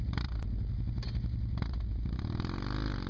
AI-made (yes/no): no